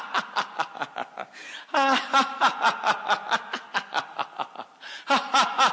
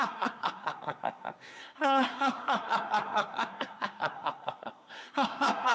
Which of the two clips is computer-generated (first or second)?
second